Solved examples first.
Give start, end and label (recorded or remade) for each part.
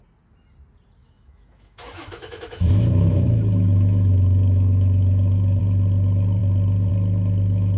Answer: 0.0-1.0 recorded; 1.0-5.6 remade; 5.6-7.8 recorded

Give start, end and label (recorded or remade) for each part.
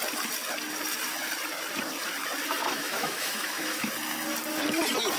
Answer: 0.0-2.6 recorded; 2.6-3.9 remade; 3.9-5.2 recorded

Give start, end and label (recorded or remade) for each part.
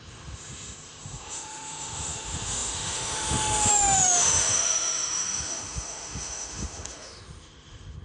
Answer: 0.0-8.0 remade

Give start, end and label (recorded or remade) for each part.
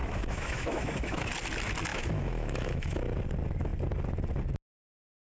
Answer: 0.0-1.3 remade; 1.3-1.9 recorded; 1.9-3.0 remade; 3.0-5.4 recorded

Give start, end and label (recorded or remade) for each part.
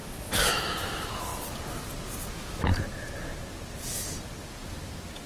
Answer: 0.0-0.5 recorded; 0.5-1.3 remade; 1.3-2.3 recorded; 2.3-2.7 remade; 2.7-5.3 recorded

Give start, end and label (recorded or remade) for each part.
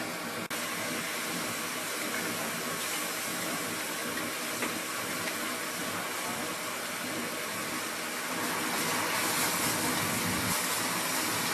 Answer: 0.0-11.5 recorded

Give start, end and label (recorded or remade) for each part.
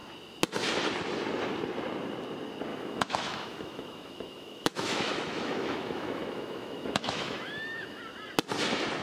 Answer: 0.0-2.7 recorded; 2.7-8.0 remade; 8.0-9.0 recorded